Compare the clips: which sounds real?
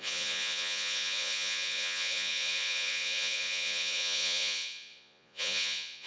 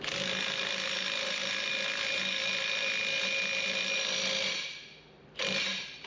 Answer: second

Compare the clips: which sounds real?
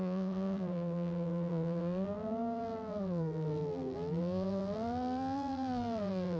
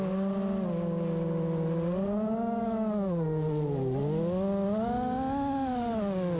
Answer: second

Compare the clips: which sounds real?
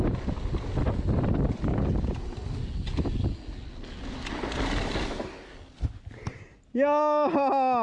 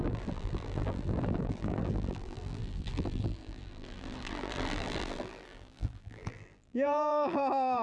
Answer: first